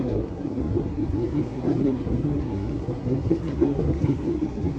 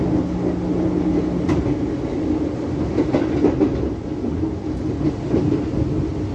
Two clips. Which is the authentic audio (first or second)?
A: second